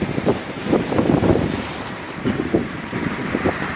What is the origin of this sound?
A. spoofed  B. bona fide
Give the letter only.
A